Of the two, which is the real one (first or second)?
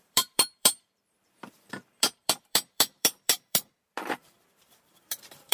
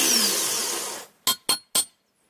second